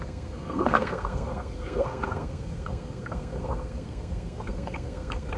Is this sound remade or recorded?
remade